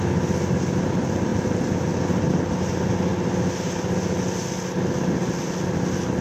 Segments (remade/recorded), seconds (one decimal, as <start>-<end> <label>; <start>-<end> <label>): 0.0-6.2 recorded